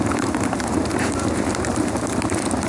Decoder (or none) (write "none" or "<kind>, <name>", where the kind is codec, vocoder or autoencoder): vocoder, BigVGAN v2